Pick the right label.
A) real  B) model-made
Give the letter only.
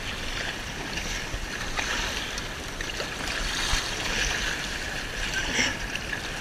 A